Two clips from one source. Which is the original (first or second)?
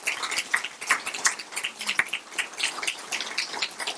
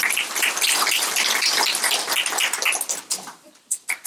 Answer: first